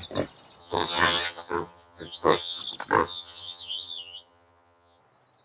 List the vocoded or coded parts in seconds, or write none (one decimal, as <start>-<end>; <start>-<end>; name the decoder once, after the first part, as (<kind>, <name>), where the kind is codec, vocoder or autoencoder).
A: 0.6-2.6 (vocoder, HiFi-GAN); 3.0-5.0